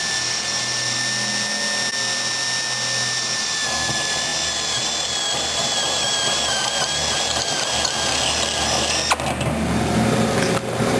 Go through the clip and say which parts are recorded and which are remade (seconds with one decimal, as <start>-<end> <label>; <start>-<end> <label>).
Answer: 0.0-11.0 recorded